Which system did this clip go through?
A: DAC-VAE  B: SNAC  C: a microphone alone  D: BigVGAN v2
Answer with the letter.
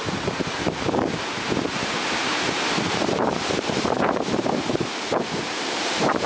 D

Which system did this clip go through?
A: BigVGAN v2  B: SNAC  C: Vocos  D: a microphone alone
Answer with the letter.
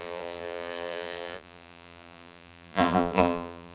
A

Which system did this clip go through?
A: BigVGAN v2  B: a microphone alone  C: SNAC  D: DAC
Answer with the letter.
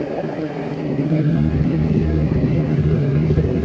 C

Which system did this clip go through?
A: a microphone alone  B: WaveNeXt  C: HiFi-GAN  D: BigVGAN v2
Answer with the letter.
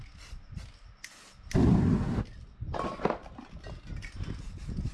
A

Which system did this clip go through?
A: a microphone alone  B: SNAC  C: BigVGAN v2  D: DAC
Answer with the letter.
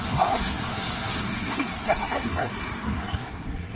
B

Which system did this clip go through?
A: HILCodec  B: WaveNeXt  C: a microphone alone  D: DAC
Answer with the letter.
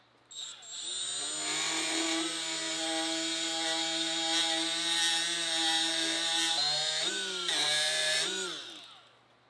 C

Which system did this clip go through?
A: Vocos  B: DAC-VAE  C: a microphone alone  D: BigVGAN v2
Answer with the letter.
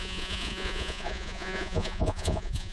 A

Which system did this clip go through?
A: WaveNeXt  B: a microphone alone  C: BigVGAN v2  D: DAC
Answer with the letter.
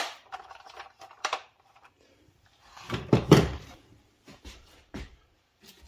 C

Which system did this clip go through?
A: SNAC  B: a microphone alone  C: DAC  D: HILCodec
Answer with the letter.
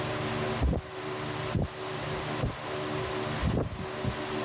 B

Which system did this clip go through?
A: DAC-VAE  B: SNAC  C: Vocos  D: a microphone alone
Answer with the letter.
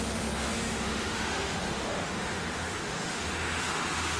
A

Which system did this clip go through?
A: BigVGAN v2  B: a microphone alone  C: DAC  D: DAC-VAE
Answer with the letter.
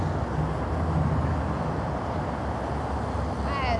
B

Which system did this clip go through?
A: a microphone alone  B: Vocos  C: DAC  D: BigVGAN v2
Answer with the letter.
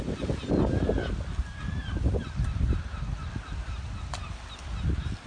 A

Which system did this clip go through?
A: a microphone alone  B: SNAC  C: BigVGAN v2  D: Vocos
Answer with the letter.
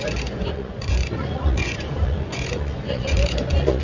D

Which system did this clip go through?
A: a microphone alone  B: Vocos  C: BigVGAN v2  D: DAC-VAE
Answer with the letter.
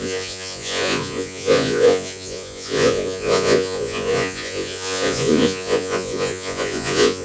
B